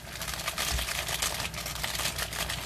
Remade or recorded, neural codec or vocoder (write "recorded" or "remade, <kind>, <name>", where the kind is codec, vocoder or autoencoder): recorded